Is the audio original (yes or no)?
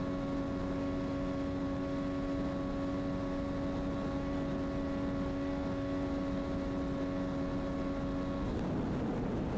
yes